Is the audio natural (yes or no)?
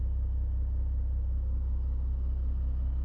yes